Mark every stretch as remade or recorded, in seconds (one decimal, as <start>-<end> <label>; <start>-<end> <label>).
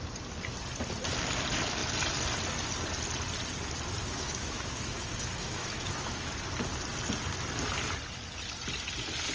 0.0-4.0 recorded; 4.0-6.3 remade; 6.3-9.3 recorded